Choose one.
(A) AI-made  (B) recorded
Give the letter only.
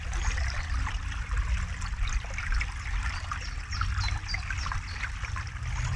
B